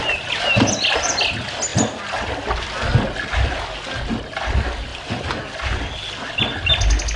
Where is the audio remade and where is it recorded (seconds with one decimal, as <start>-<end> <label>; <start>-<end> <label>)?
0.0-7.2 recorded